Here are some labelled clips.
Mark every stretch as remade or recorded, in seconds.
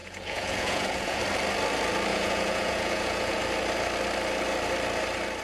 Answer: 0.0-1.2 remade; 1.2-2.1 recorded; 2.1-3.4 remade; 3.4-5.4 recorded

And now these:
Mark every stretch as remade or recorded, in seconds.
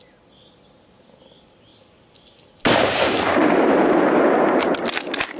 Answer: 0.0-5.4 recorded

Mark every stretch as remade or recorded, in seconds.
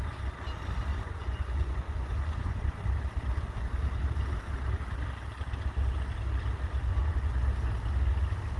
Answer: 0.0-0.9 recorded; 0.9-2.8 remade; 2.8-6.9 recorded; 6.9-7.4 remade; 7.4-8.6 recorded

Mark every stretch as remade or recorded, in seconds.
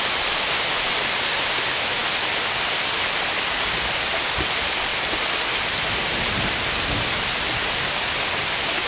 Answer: 0.0-8.9 recorded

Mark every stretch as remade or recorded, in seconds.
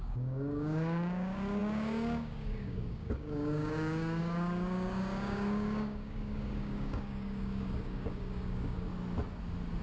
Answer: 0.0-8.9 remade; 8.9-9.8 recorded